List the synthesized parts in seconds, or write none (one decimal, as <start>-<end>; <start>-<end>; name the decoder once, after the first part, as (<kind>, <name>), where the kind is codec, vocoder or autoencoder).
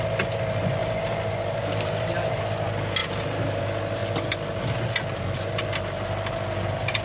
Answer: 0.8-2.4 (vocoder, BigVGAN v2); 3.0-3.6